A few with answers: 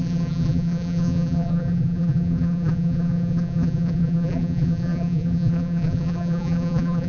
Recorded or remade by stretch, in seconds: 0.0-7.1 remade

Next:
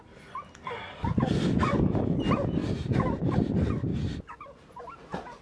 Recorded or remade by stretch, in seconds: 0.0-2.6 recorded; 2.6-3.5 remade; 3.5-3.9 recorded; 3.9-4.8 remade; 4.8-5.4 recorded